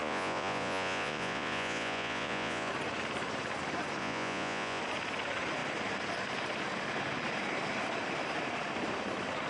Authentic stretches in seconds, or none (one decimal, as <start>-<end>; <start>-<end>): 2.7-4.0; 4.8-9.5